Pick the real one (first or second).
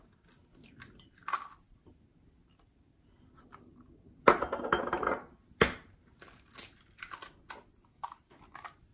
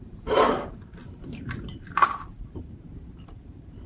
first